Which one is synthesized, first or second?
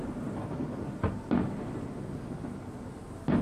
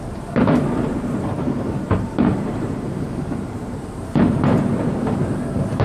second